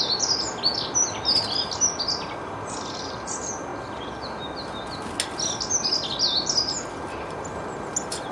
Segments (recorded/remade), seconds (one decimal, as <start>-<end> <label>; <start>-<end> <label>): 0.0-8.3 recorded